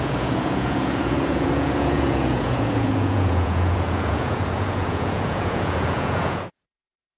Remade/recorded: remade